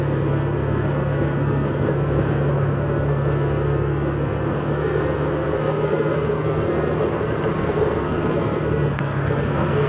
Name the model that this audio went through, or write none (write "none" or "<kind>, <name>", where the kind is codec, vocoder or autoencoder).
codec, SNAC